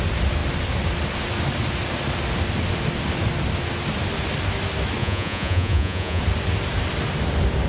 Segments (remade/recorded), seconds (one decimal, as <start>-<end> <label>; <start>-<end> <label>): 0.0-5.0 recorded; 5.0-6.2 remade; 6.2-7.7 recorded